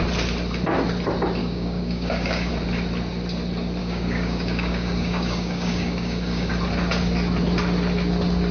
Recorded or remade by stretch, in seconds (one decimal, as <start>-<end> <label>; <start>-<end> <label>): 0.0-1.4 recorded; 1.4-2.5 remade; 2.5-3.8 recorded; 3.8-6.5 remade; 6.5-8.5 recorded